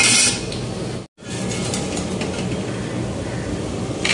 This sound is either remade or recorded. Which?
recorded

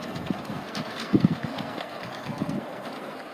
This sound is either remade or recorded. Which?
remade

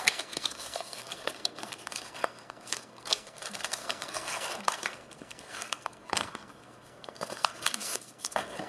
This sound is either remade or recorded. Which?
remade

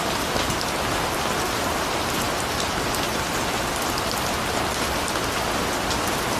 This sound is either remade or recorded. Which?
recorded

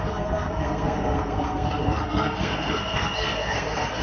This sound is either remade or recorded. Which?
remade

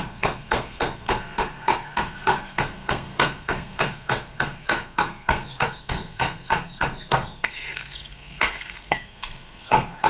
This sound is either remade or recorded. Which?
remade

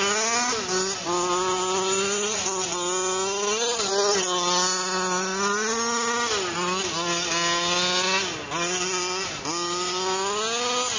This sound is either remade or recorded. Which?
recorded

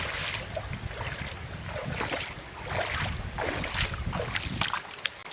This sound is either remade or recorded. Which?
recorded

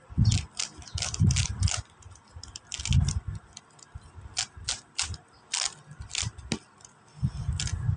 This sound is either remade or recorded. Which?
recorded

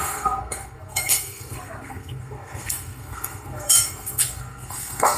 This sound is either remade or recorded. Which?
remade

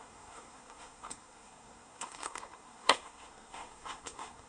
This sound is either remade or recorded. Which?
remade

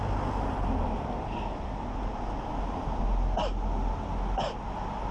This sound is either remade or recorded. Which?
recorded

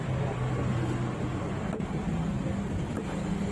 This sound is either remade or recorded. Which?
recorded